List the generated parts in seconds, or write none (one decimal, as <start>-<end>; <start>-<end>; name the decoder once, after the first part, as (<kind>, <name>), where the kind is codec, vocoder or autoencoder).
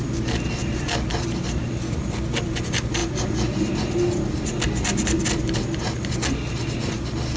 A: none